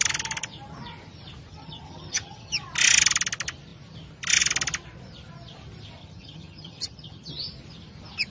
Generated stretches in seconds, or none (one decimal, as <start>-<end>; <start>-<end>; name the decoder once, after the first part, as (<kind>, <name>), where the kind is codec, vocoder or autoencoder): 1.5-2.5 (vocoder, HiFi-GAN); 6.0-7.3